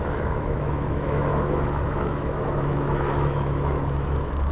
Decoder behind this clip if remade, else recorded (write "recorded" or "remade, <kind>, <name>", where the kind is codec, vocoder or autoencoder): remade, autoencoder, DAC-VAE